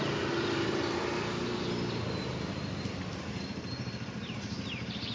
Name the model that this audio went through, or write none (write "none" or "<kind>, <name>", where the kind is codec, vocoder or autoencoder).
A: none